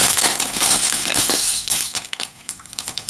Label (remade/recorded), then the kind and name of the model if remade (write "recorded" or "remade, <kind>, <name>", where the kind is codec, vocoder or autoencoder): remade, codec, SNAC